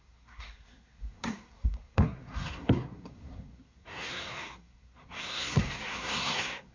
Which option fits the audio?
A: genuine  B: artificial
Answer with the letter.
B